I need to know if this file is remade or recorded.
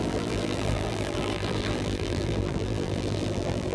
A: remade